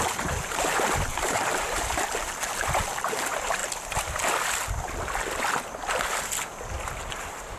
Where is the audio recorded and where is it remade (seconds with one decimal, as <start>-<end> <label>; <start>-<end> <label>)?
0.0-3.6 remade; 3.6-7.1 recorded; 7.1-7.6 remade